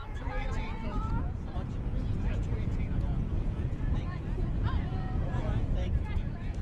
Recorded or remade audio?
remade